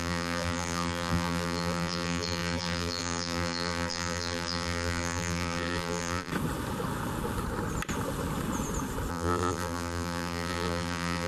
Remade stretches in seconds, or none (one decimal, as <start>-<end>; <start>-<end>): 0.0-6.3; 9.1-11.3

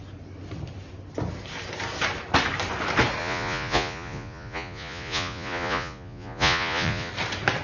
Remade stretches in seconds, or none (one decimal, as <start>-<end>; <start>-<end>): 3.2-7.1

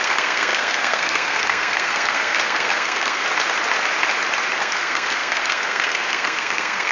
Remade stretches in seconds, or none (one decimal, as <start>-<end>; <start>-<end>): 0.0-3.2; 4.6-6.9

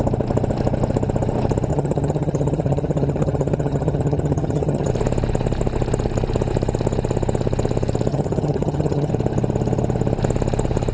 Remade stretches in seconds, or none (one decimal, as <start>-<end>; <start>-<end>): 1.7-4.9; 8.1-9.1

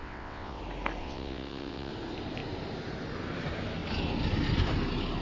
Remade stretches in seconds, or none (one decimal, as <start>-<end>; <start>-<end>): 0.0-0.6; 1.0-1.9